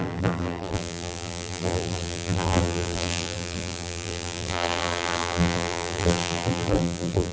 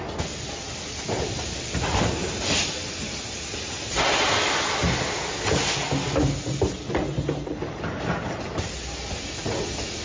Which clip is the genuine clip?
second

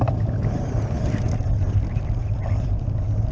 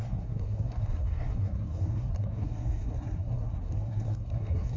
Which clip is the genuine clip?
first